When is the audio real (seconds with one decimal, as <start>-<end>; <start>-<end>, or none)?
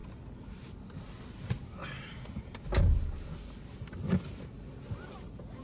0.0-5.6